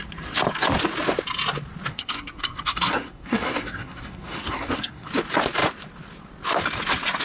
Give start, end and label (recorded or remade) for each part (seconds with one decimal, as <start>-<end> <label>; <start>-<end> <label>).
0.0-1.9 recorded; 1.9-5.1 remade; 5.1-7.2 recorded